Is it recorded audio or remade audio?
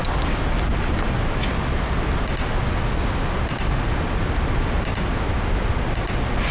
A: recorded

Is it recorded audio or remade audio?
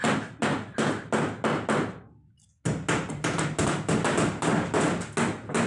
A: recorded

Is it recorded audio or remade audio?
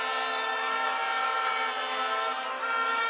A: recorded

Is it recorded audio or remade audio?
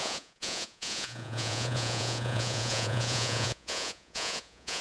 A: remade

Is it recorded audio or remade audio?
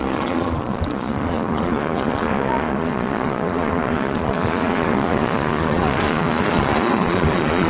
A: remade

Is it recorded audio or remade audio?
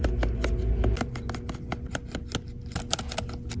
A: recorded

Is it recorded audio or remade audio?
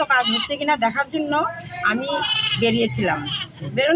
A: recorded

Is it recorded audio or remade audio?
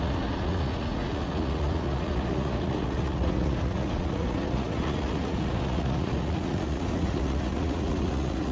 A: remade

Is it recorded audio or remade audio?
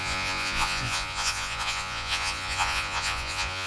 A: remade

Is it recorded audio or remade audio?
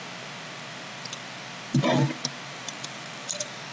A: recorded